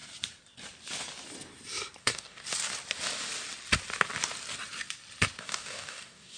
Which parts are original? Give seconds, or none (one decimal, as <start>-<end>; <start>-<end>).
0.0-2.0; 2.4-5.4